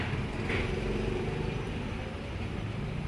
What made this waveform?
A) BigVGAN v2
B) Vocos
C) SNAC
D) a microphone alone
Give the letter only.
D